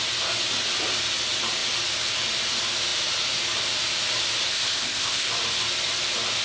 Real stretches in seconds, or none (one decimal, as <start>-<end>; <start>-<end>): 0.0-4.5; 5.3-6.4